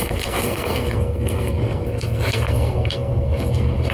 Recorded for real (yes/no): no